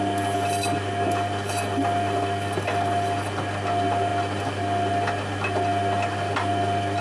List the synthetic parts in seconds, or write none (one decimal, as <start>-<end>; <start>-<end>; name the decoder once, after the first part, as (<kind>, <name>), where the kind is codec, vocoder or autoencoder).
none